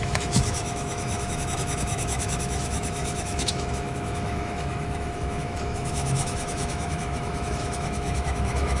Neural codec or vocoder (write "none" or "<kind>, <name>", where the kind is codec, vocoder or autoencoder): autoencoder, DAC-VAE